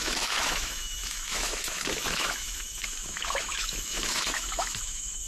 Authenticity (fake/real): fake